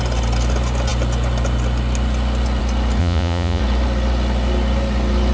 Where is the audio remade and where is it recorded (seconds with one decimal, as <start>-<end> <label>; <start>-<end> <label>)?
0.0-3.0 recorded; 3.0-3.6 remade; 3.6-5.3 recorded